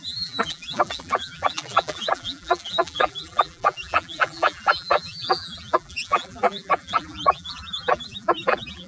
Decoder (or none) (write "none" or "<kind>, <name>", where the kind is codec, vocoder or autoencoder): vocoder, BigVGAN v2